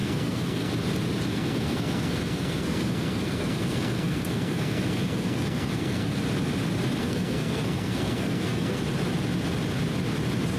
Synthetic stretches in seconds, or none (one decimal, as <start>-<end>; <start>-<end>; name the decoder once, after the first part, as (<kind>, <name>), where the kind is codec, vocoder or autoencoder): 0.0-0.7 (codec, SNAC); 1.3-6.2; 7.0-8.8